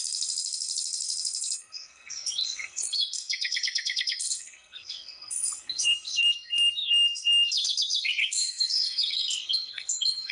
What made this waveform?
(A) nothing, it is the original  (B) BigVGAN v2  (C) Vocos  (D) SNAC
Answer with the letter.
D